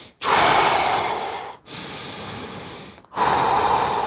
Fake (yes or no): no